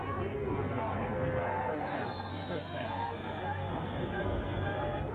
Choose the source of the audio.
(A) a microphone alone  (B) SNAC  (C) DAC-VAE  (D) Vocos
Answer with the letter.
B